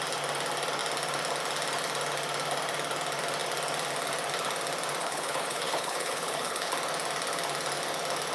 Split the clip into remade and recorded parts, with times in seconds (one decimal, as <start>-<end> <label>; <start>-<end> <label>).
0.0-5.0 recorded; 5.0-6.7 remade; 6.7-8.3 recorded